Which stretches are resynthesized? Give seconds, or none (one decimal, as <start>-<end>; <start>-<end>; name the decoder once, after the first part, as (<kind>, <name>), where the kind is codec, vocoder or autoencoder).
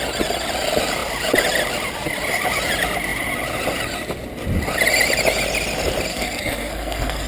6.1-7.3 (codec, SNAC)